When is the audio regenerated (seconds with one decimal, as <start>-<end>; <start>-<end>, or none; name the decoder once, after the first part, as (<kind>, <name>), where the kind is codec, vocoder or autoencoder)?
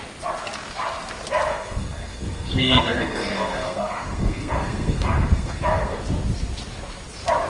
1.5-6.0 (codec, SNAC)